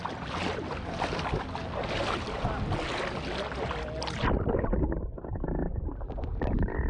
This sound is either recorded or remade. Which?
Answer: recorded